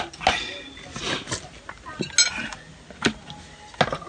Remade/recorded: recorded